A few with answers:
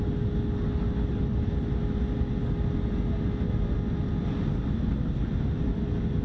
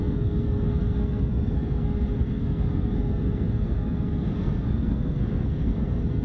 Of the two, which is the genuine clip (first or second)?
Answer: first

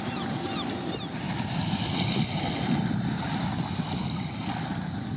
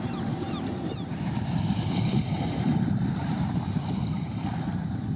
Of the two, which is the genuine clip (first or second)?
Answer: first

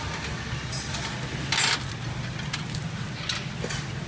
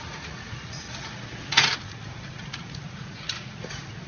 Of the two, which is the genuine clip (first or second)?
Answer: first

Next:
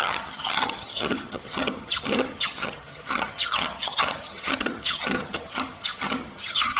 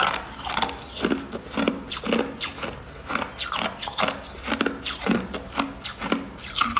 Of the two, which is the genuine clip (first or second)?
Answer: second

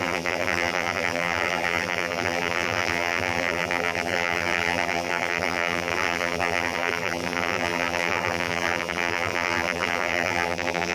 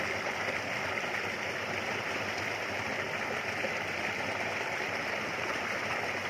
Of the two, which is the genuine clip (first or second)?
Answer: second